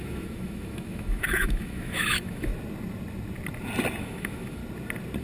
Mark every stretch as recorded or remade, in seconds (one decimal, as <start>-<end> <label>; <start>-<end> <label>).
0.0-2.5 remade; 2.5-4.0 recorded; 4.0-4.6 remade; 4.6-5.2 recorded